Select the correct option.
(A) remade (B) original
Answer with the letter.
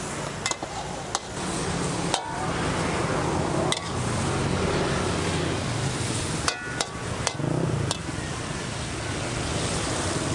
B